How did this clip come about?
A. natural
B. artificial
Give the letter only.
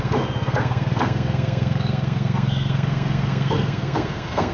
B